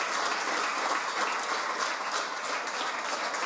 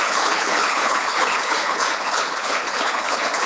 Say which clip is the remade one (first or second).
second